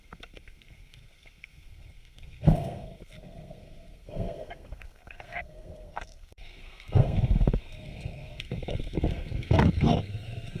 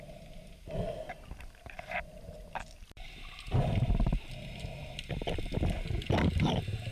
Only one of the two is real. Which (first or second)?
second